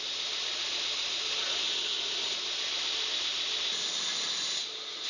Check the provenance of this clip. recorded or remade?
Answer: recorded